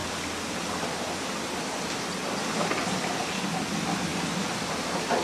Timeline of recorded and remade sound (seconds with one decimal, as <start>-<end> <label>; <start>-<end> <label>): 0.0-5.2 recorded